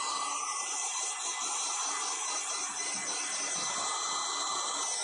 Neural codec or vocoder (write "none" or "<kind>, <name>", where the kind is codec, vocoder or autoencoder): none